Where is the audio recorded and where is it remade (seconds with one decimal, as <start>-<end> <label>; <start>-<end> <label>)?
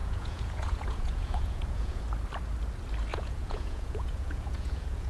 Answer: 0.0-2.0 remade; 2.0-3.1 recorded; 3.1-5.1 remade